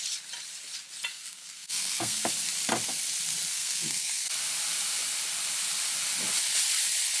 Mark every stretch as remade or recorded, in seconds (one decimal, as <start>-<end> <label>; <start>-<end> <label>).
0.0-1.1 recorded; 1.1-2.2 remade; 2.2-3.5 recorded; 3.5-4.3 remade; 4.3-7.2 recorded